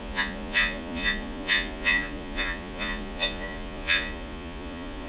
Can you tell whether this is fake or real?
fake